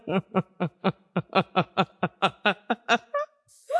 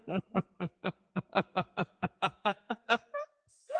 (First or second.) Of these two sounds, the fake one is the second